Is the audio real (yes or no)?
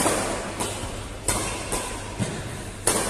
yes